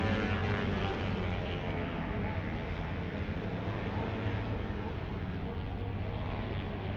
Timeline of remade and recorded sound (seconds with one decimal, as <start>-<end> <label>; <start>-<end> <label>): 0.0-0.4 recorded; 0.4-2.4 remade; 2.4-7.0 recorded